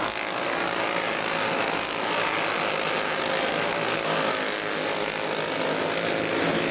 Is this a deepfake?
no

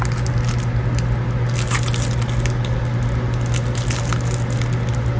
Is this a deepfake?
no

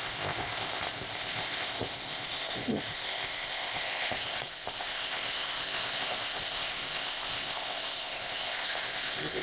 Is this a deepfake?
yes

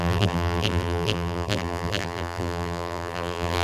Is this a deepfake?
yes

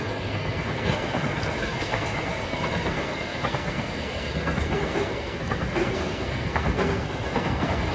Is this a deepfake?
yes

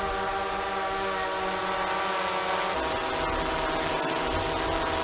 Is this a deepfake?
no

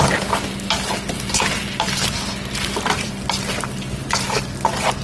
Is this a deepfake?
no